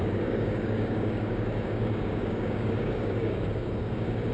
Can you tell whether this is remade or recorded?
remade